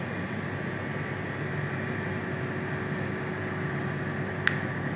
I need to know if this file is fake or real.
real